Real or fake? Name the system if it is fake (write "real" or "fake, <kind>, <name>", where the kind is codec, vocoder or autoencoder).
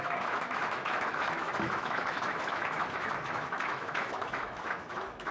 fake, autoencoder, DAC-VAE